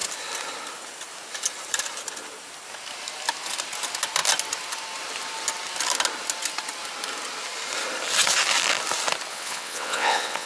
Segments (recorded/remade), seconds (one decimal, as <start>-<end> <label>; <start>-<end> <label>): 0.0-9.3 recorded; 9.3-10.5 remade